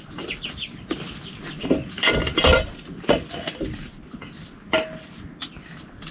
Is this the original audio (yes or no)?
yes